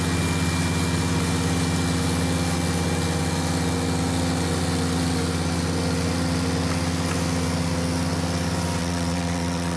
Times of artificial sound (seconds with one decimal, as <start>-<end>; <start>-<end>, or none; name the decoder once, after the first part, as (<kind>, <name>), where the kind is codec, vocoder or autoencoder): 8.8-9.8 (vocoder, WaveNeXt)